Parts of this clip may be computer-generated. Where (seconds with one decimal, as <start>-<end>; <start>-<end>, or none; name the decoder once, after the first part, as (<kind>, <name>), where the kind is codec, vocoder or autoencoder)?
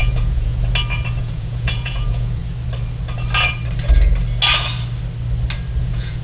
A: 0.0-0.5 (vocoder, Vocos); 1.2-2.4; 5.8-6.2